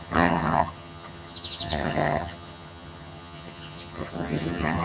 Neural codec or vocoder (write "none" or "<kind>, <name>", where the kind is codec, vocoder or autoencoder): vocoder, HiFi-GAN